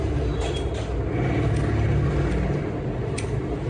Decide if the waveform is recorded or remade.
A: recorded